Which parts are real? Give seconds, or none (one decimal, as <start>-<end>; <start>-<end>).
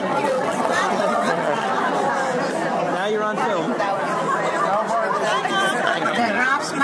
1.7-5.8